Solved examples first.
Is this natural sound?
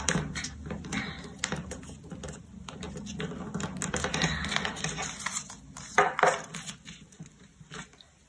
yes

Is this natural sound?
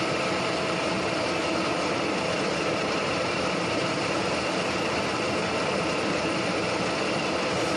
yes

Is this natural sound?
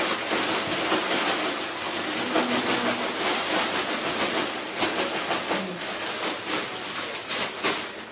yes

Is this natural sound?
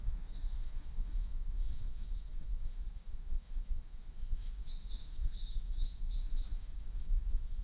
no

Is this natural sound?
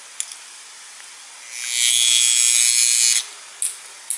yes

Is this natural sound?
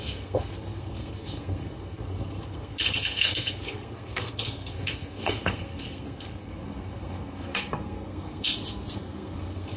no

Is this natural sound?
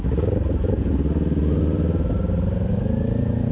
yes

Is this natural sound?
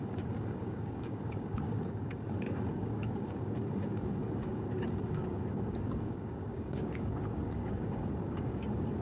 no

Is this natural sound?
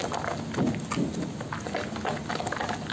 yes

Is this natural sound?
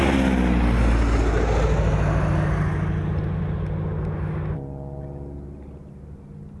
yes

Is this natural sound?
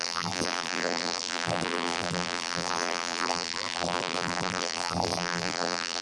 no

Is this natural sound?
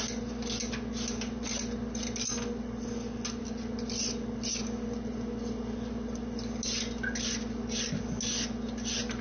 yes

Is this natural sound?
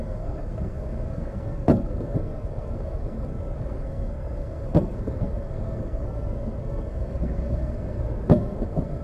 no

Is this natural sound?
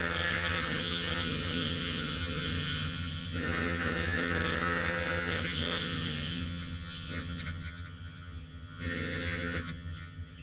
no